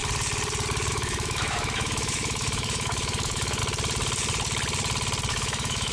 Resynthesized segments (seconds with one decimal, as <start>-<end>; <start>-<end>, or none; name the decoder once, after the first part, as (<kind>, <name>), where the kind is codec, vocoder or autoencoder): 0.9-3.6 (autoencoder, DAC-VAE); 5.3-5.9